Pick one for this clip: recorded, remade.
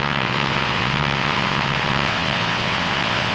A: remade